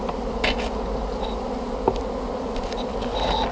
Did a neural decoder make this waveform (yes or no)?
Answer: no